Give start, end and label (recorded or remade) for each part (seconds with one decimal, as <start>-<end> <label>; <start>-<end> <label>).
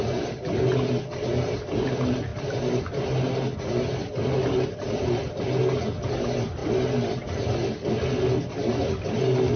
0.0-9.6 recorded